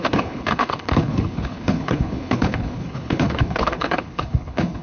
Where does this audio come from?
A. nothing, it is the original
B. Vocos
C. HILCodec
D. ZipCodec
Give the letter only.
C